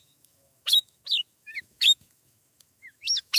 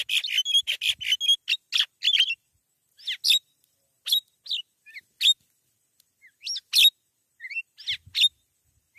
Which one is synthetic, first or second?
first